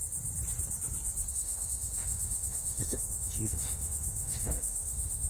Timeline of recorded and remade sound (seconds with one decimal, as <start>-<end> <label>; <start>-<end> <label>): 0.0-1.3 recorded; 1.3-5.3 remade